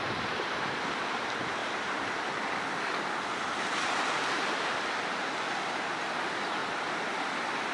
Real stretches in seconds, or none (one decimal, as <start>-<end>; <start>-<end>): 1.6-5.0; 6.6-7.7